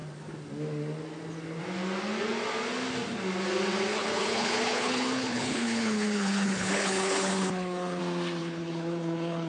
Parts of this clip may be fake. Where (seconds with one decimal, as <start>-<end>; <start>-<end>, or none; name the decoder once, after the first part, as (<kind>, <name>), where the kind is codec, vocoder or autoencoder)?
3.9-8.0 (codec, HILCodec); 8.4-9.5